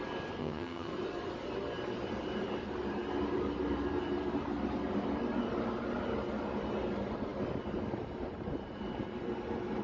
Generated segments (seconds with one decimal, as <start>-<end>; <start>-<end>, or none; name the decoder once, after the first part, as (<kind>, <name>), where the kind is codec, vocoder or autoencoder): 0.4-0.9 (vocoder, HiFi-GAN)